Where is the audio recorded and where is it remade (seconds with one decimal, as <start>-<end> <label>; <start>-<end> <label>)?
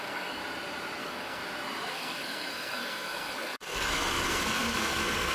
0.0-0.4 remade; 0.4-1.0 recorded; 1.0-1.4 remade; 1.4-1.9 recorded; 1.9-5.3 remade